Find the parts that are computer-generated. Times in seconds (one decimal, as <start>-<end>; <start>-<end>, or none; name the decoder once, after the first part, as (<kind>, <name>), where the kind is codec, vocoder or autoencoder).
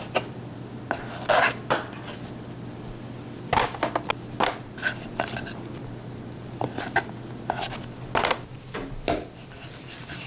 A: none